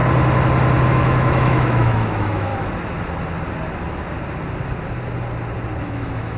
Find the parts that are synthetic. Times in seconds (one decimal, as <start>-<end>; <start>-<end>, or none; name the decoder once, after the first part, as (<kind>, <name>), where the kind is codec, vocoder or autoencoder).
0.9-2.5 (autoencoder, DAC-VAE); 5.8-6.4